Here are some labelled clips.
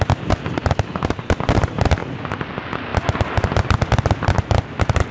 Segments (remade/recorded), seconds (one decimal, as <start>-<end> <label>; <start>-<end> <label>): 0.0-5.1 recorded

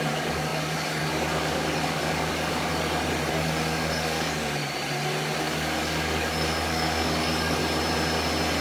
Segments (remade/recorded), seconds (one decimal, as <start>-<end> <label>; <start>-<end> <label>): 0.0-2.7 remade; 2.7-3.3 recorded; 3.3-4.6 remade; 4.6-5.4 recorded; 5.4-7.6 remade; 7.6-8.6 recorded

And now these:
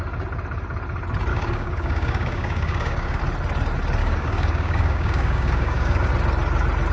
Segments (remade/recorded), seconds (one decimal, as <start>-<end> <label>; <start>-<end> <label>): 0.0-1.3 recorded; 1.3-3.2 remade; 3.2-4.0 recorded; 4.0-6.1 remade; 6.1-6.9 recorded

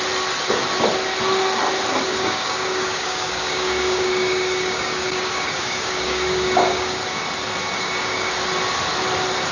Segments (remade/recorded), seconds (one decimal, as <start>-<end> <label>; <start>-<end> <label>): 0.0-2.1 recorded; 2.1-7.0 remade; 7.0-7.8 recorded; 7.8-8.3 remade; 8.3-9.5 recorded

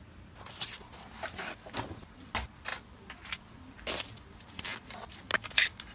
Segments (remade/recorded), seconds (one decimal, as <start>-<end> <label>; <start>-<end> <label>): 0.0-5.9 recorded

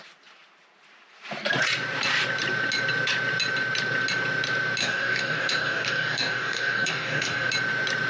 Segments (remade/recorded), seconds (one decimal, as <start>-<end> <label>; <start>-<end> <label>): 0.0-4.8 recorded; 4.8-7.5 remade; 7.5-8.1 recorded

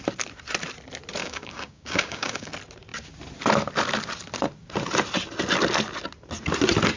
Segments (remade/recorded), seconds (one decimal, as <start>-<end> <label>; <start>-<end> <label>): 0.0-1.2 recorded; 1.2-2.5 remade; 2.5-7.0 recorded